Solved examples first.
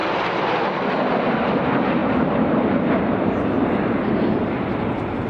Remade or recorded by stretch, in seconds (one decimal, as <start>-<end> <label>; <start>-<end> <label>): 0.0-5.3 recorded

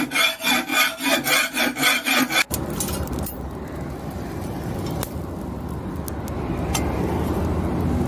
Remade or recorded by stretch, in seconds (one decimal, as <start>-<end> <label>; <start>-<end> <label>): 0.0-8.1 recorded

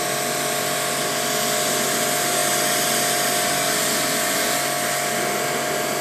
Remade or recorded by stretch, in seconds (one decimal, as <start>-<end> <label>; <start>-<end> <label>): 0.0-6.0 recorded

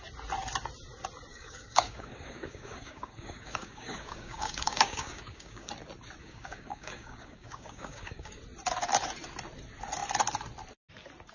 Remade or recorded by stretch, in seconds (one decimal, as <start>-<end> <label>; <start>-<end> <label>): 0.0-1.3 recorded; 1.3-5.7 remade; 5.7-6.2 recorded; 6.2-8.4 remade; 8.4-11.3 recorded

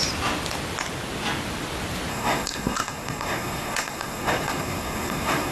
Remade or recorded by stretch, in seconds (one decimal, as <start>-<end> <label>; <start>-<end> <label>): 0.0-2.1 recorded; 2.1-5.5 remade